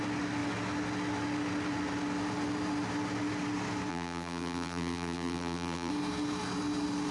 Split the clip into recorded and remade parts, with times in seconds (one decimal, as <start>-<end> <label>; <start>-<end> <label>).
0.0-3.9 recorded; 3.9-5.9 remade; 5.9-7.1 recorded

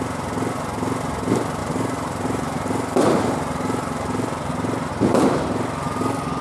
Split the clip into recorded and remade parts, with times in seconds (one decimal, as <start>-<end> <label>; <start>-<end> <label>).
0.0-1.6 recorded; 1.6-4.9 remade; 4.9-6.4 recorded

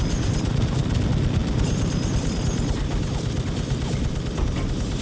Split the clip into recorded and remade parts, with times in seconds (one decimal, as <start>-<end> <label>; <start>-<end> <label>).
0.0-1.4 recorded; 1.4-4.4 remade; 4.4-5.0 recorded

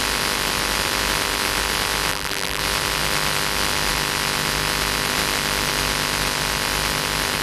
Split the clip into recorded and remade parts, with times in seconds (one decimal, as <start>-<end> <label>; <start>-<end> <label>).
0.0-2.1 recorded; 2.1-2.6 remade; 2.6-7.4 recorded

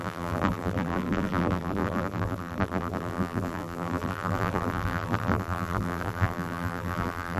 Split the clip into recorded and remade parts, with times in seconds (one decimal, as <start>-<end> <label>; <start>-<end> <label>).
0.0-7.4 remade

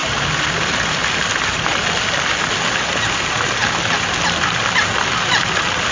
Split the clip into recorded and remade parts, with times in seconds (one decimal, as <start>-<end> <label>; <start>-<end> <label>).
0.0-1.2 remade; 1.2-5.9 recorded

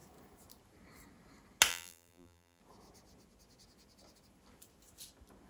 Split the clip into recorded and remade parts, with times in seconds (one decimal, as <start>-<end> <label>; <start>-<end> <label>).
0.0-1.7 recorded; 1.7-2.6 remade; 2.6-5.5 recorded